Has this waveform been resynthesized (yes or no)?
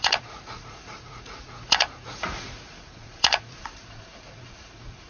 yes